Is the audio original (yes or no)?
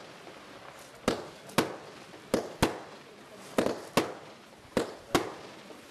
yes